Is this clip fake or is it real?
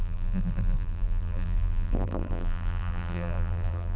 fake